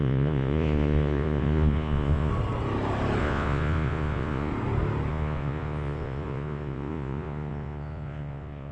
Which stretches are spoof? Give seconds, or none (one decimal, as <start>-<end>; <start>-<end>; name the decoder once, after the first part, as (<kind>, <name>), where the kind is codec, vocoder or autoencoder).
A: 0.0-2.3 (vocoder, Vocos); 3.2-4.5; 5.1-8.7